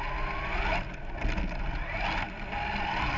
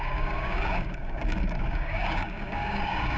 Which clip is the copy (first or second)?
second